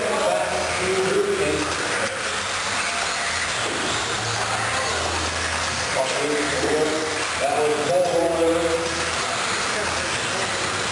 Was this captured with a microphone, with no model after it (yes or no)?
yes